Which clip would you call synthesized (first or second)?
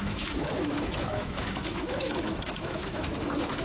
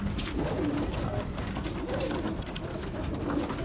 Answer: first